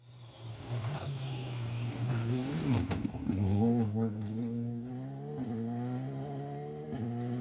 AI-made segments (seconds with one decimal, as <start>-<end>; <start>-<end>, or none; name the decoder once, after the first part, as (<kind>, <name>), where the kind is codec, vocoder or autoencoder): 0.5-4.9 (codec, DAC)